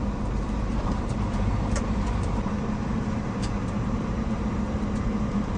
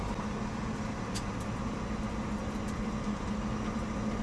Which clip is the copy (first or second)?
first